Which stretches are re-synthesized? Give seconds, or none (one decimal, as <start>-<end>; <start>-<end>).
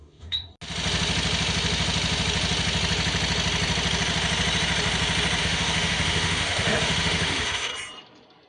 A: 0.0-0.5; 5.4-7.7